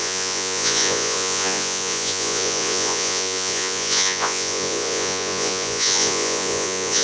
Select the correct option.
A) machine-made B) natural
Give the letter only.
A